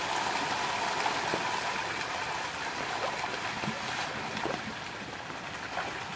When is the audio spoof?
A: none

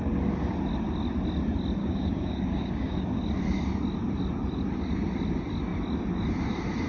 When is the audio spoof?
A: 1.8-3.2 (codec, DAC)

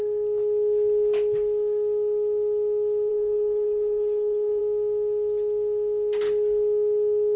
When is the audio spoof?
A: 3.1-4.6 (codec, HILCodec)